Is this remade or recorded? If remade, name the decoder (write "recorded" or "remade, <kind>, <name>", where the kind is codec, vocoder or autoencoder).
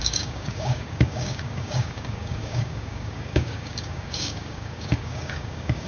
remade, codec, DAC